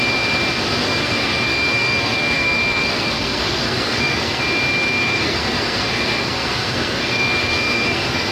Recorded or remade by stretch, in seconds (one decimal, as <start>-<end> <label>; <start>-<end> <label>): 0.0-0.8 recorded; 0.8-4.4 remade; 4.4-5.0 recorded; 5.0-8.3 remade